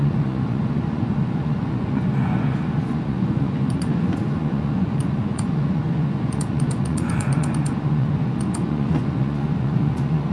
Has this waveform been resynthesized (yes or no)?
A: yes